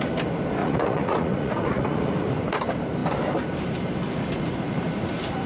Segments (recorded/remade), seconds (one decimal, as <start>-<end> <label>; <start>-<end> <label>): 0.0-0.6 recorded; 0.6-2.3 remade; 2.3-5.5 recorded